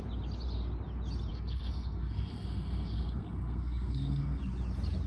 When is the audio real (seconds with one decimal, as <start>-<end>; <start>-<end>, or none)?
0.0-1.3; 4.4-5.1